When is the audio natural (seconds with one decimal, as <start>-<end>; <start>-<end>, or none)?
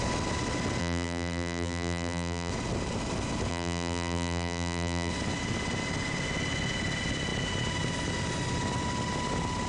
0.0-0.8; 2.5-3.5; 5.1-9.7